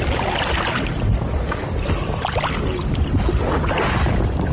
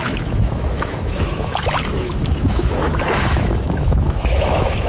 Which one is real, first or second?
first